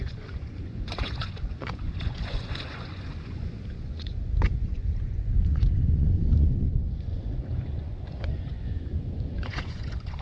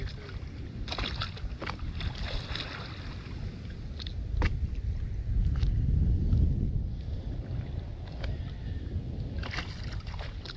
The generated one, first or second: first